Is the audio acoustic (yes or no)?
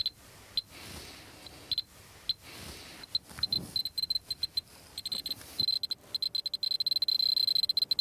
yes